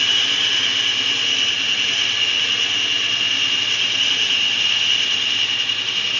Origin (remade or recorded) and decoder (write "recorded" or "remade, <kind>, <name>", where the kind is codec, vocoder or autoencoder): recorded